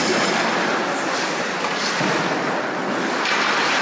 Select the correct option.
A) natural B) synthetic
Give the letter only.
A